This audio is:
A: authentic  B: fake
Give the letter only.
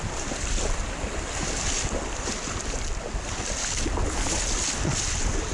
A